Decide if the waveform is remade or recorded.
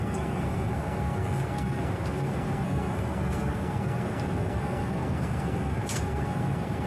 remade